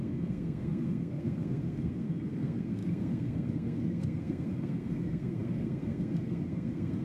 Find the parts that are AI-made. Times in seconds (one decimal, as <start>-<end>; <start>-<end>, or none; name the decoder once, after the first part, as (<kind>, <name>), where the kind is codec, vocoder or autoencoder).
0.0-7.0 (codec, SNAC)